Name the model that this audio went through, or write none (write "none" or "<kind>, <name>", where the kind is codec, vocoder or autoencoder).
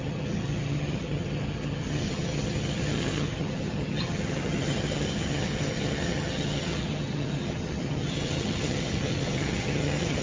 vocoder, HiFi-GAN